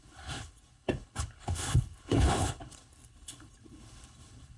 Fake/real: fake